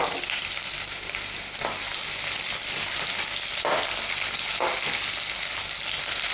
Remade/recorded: recorded